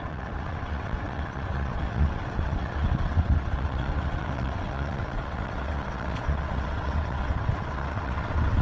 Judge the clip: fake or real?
fake